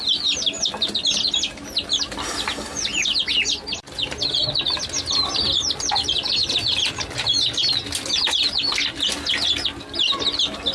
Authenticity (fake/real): real